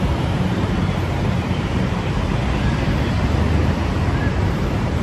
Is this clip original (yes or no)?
no